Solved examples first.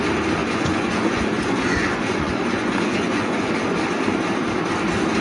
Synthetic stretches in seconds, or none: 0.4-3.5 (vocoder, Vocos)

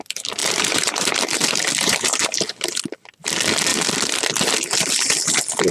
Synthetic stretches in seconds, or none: 0.4-2.8 (vocoder, BigVGAN v2)

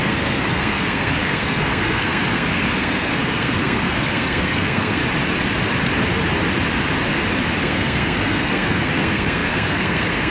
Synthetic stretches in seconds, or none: 0.0-5.0 (codec, SNAC); 7.6-10.3

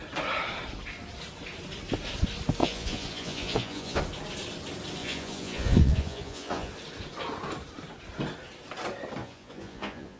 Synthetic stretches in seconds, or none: 2.6-4.0 (vocoder, Vocos); 5.0-6.7; 9.2-10.2

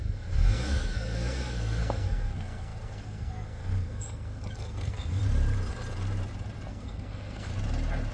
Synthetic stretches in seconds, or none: 0.0-5.2 (codec, SNAC); 6.7-7.5

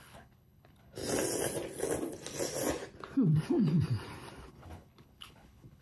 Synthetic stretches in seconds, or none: 0.0-1.0 (codec, HILCodec); 4.5-5.8